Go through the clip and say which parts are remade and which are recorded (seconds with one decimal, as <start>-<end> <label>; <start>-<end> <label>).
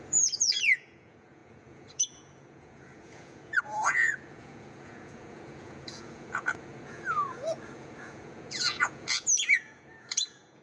0.0-10.6 remade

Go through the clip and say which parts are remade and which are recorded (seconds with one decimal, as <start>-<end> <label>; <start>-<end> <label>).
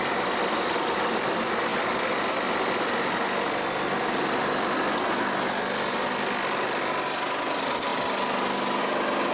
0.0-9.3 recorded